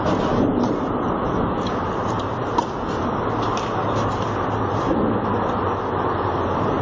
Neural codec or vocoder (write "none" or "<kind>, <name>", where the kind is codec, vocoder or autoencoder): none